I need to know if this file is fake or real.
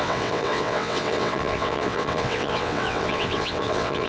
fake